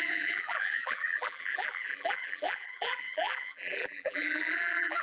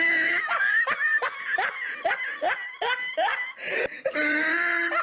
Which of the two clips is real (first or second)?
second